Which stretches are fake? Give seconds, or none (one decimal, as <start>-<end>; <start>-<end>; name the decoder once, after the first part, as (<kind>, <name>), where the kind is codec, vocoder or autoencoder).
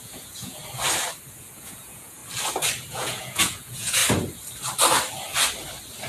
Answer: 0.0-0.6 (vocoder, Vocos); 1.4-2.2; 2.9-4.0